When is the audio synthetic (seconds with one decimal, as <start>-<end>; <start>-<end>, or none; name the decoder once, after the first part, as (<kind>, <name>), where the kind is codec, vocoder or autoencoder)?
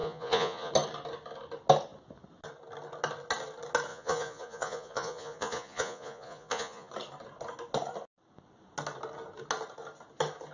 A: 0.0-0.7 (vocoder, Vocos); 3.9-6.9